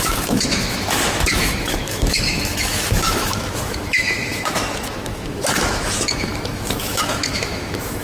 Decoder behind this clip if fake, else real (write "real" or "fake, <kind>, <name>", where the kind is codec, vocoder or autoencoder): fake, autoencoder, DAC-VAE